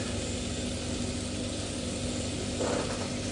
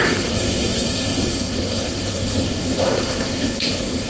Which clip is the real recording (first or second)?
first